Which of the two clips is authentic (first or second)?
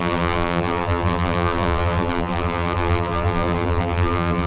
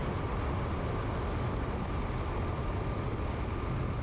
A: second